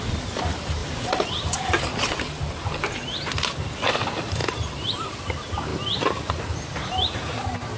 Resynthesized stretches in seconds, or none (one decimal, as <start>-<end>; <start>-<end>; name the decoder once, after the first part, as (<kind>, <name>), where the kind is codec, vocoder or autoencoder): 0.8-2.9 (vocoder, BigVGAN v2); 4.4-5.2